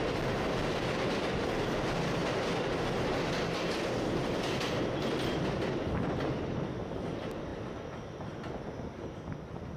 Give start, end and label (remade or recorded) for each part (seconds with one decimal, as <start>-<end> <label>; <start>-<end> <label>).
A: 0.0-9.8 recorded